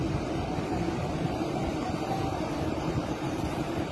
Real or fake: fake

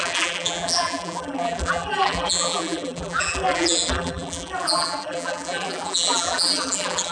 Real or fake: fake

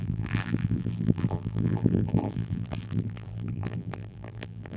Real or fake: fake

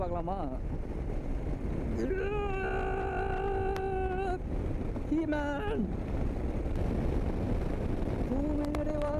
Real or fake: real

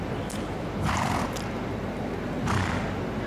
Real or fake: real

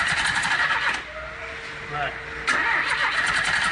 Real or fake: real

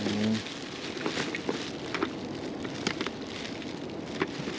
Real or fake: real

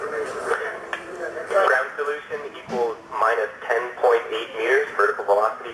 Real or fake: fake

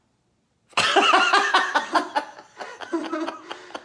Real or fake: real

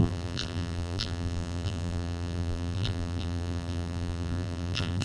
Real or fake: fake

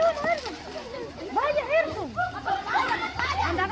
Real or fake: fake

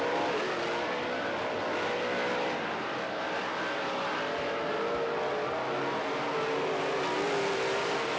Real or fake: real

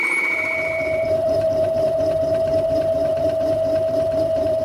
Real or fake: fake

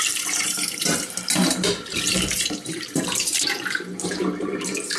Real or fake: fake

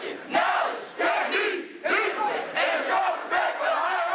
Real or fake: fake